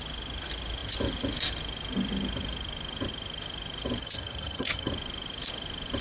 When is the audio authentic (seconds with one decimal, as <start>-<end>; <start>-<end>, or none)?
0.0-4.0; 4.9-6.0